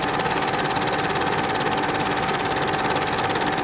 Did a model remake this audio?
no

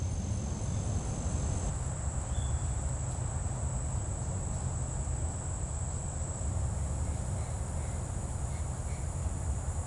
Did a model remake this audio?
no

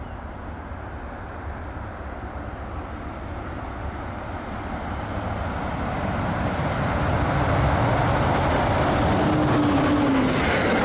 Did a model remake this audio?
no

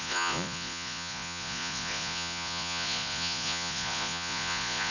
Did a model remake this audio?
yes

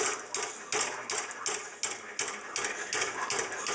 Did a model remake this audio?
no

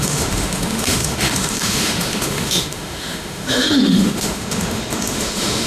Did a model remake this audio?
yes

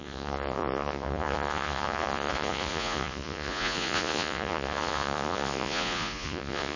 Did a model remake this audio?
yes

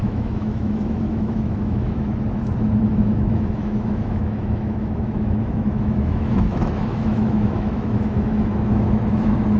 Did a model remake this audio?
yes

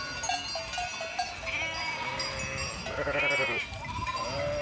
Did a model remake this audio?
no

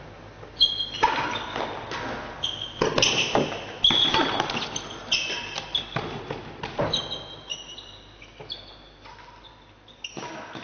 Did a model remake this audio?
no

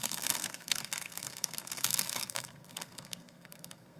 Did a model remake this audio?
yes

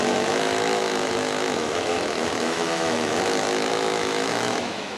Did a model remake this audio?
yes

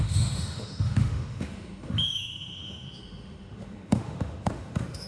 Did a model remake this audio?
yes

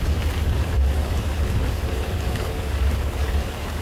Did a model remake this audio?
yes